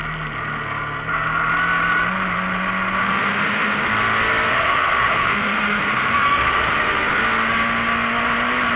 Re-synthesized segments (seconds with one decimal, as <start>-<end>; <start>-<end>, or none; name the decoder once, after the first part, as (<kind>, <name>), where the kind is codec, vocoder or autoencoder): 3.0-3.9 (autoencoder, DAC-VAE); 4.5-7.2